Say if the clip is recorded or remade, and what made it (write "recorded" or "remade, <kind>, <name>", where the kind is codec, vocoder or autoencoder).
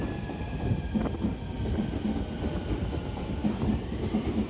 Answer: recorded